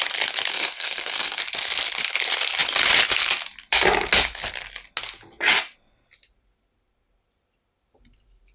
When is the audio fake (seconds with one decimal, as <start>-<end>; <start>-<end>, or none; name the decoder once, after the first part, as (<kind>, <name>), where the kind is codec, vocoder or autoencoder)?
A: 0.5-1.4 (codec, SNAC)